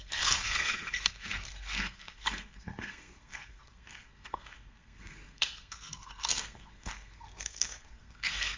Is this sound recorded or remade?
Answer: remade